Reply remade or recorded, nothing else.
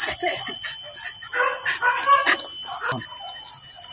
recorded